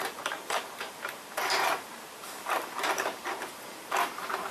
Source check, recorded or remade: remade